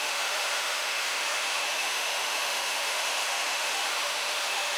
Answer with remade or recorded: remade